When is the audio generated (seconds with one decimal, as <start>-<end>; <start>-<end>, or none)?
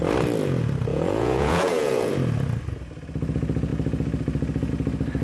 0.9-2.1